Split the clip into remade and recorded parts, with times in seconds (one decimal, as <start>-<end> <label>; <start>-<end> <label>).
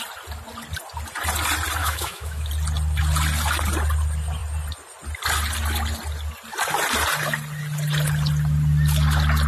0.0-1.8 recorded; 1.8-2.5 remade; 2.5-9.5 recorded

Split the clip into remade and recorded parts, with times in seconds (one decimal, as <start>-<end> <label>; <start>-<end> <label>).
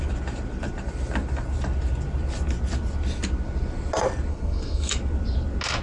0.0-4.3 recorded; 4.3-4.9 remade; 4.9-5.8 recorded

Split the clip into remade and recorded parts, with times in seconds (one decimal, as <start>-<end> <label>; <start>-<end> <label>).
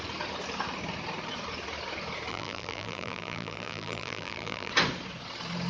0.0-2.3 recorded; 2.3-4.7 remade; 4.7-5.7 recorded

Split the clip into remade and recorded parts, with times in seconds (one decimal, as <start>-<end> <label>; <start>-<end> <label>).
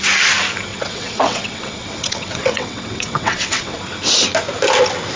0.0-0.7 recorded; 0.7-3.8 remade; 3.8-5.2 recorded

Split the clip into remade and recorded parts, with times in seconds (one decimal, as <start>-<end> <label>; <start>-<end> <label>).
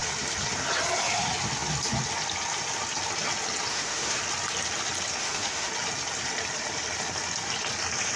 0.0-3.7 recorded; 3.7-4.2 remade; 4.2-5.2 recorded; 5.2-5.7 remade; 5.7-8.2 recorded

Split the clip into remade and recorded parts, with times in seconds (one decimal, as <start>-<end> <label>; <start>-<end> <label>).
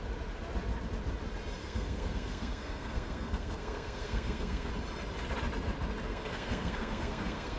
0.0-1.6 recorded; 1.6-4.7 remade; 4.7-6.1 recorded; 6.1-7.6 remade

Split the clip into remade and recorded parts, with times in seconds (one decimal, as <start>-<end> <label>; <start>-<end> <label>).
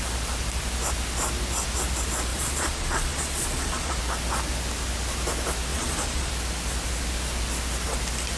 0.0-2.3 recorded; 2.3-4.0 remade; 4.0-5.7 recorded; 5.7-6.3 remade; 6.3-8.4 recorded